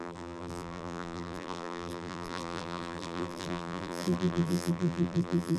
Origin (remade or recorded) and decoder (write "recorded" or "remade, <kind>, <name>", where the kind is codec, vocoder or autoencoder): remade, vocoder, BigVGAN v2